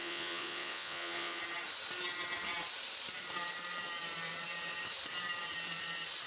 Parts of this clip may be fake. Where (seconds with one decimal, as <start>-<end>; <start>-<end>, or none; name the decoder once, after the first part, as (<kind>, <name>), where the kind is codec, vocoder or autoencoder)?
0.0-1.4 (vocoder, Vocos)

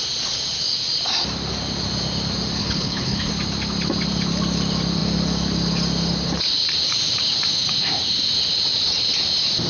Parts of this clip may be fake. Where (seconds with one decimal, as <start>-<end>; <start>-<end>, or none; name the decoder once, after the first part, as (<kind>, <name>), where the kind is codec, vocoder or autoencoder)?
2.6-3.3 (codec, HILCodec)

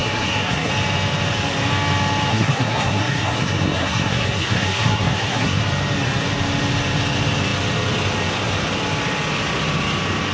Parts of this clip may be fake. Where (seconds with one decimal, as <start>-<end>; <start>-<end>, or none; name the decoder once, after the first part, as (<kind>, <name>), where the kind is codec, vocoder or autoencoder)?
0.0-0.7 (codec, SNAC); 2.3-5.6

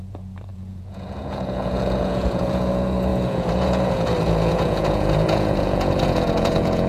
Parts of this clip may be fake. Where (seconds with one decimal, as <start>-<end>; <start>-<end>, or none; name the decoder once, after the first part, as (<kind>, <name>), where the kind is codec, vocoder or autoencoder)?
0.0-6.9 (vocoder, Vocos)